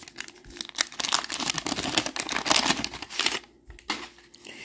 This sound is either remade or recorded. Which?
recorded